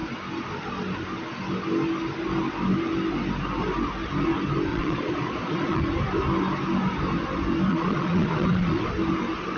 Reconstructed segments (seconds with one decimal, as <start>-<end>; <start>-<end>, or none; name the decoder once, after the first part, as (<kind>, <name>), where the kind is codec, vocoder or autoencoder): 4.7-5.8 (vocoder, Vocos); 7.7-8.9